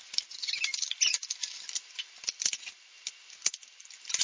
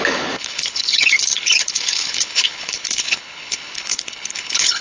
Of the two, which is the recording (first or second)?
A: first